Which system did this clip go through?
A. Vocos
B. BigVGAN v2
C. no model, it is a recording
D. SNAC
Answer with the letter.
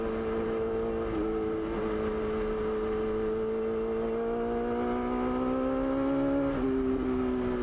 C